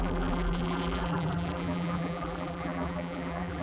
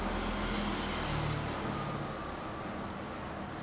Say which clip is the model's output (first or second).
first